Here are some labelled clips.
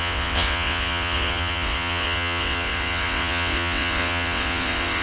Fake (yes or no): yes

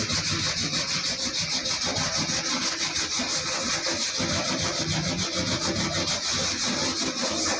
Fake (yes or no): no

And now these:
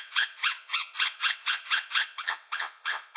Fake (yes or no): yes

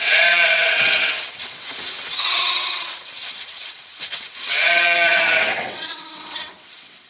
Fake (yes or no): yes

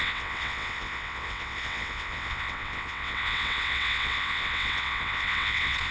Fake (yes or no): yes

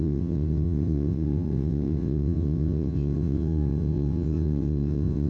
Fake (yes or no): yes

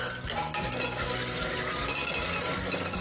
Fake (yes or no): no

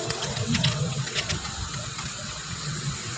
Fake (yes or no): yes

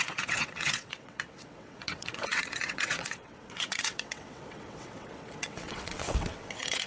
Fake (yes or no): yes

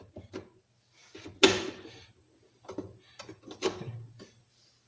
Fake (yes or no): no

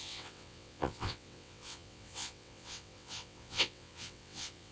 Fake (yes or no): yes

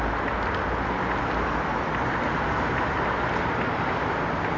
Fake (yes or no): no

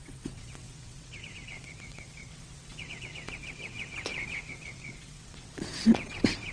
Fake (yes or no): yes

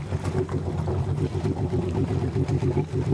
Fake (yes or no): no